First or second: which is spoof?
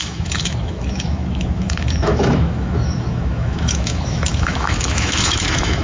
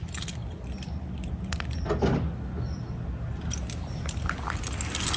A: first